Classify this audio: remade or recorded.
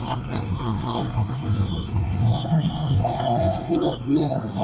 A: remade